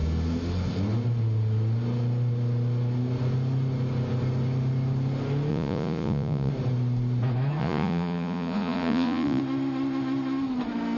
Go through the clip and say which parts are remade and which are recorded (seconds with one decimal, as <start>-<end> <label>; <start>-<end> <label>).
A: 0.0-5.5 recorded; 5.5-6.5 remade; 6.5-7.6 recorded; 7.6-9.4 remade; 9.4-11.0 recorded